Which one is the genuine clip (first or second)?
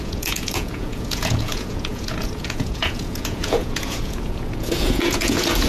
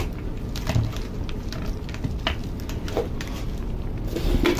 second